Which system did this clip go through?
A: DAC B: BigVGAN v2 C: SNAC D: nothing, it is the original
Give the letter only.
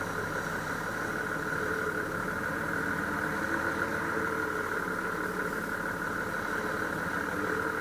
D